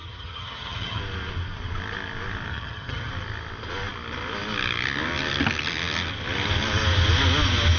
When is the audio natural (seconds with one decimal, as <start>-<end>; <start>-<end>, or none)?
1.0-2.5; 3.1-7.8